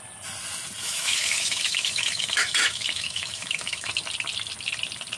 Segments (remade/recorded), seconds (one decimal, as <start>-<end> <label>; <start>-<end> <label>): 0.0-0.8 recorded; 0.8-3.9 remade; 3.9-5.2 recorded